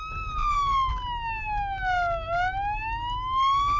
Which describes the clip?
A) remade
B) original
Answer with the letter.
B